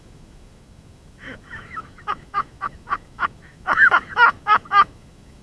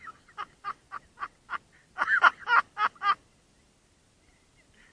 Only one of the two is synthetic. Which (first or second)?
first